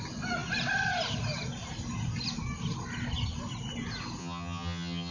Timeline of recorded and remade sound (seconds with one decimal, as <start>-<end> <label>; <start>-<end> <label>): 0.0-4.2 recorded; 4.2-5.1 remade